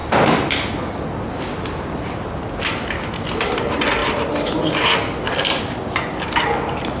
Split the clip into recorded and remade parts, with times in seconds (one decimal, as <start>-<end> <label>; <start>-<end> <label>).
0.0-4.0 recorded; 4.0-5.6 remade; 5.6-7.0 recorded